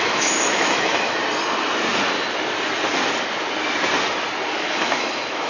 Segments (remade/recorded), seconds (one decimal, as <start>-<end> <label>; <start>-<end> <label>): 0.0-1.2 remade; 1.2-4.5 recorded; 4.5-5.5 remade